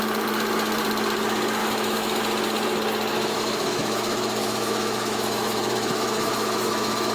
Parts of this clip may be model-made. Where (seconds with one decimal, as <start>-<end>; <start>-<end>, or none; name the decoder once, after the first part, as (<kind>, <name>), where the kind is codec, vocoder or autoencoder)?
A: 1.6-2.2 (autoencoder, DAC-VAE); 3.1-7.1